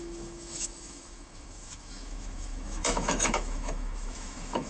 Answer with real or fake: fake